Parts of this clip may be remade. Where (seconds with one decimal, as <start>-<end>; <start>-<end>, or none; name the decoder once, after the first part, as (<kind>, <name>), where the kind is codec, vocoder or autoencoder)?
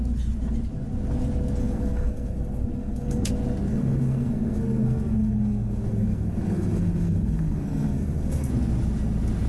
1.6-3.3 (codec, SNAC); 3.7-8.5